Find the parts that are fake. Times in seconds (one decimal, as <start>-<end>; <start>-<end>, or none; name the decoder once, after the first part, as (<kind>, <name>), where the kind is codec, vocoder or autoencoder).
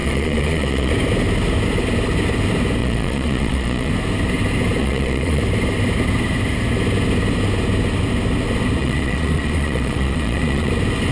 0.0-0.9 (vocoder, Vocos); 2.8-3.9; 4.8-5.4; 8.8-10.7